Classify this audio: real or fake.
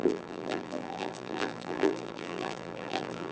fake